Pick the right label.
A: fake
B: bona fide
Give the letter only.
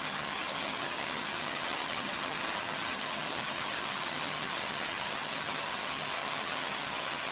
A